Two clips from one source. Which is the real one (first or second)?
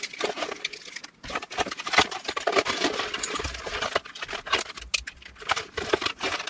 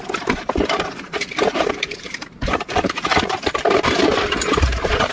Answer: first